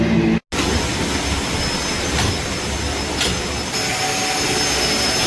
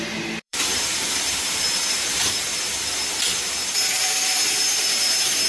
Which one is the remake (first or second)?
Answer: second